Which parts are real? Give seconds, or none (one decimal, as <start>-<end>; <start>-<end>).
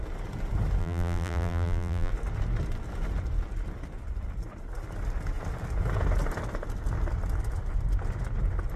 0.0-0.8; 2.1-8.8